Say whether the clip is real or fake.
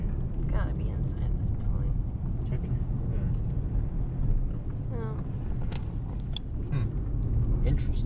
real